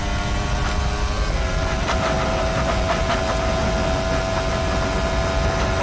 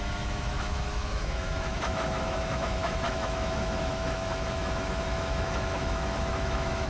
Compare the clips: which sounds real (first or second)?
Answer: first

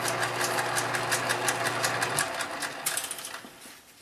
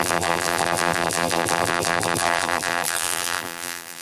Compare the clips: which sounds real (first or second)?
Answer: first